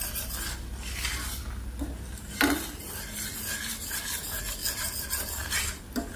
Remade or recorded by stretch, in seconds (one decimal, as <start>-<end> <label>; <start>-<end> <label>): 0.0-6.2 recorded